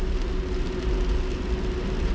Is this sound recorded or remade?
recorded